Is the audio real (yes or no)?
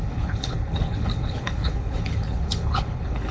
no